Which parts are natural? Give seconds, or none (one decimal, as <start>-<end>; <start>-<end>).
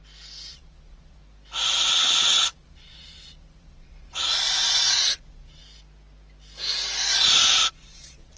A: 0.0-0.5; 1.2-1.9; 5.6-7.7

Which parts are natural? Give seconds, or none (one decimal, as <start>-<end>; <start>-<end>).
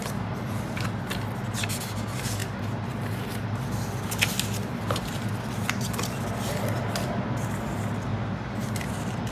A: 0.0-9.3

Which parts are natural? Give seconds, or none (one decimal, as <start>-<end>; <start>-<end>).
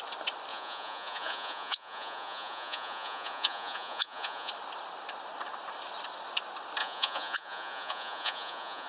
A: 0.0-0.5; 4.5-6.8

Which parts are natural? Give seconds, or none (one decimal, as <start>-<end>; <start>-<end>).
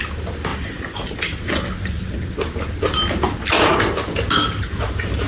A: 0.0-5.3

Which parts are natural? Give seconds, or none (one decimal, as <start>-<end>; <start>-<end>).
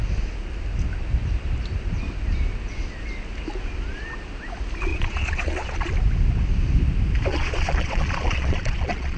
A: 0.0-4.9; 5.9-7.3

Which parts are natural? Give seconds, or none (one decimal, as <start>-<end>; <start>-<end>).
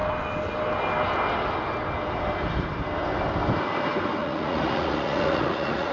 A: 0.0-4.2